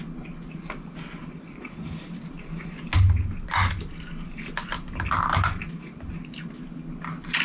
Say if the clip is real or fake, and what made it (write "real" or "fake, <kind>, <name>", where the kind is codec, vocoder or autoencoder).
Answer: real